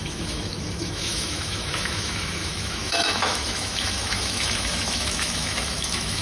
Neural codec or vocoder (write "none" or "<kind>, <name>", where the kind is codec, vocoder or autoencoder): autoencoder, DAC-VAE